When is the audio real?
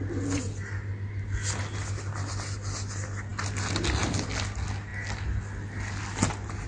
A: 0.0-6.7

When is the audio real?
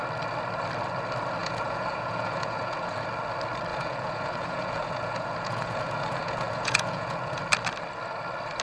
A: 0.0-1.4; 3.0-3.7; 7.4-8.6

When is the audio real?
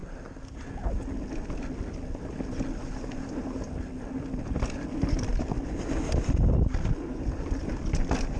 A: 0.0-5.3